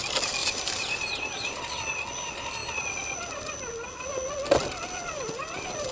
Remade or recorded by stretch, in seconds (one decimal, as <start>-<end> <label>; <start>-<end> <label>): 0.0-0.4 recorded; 0.4-1.7 remade; 1.7-5.9 recorded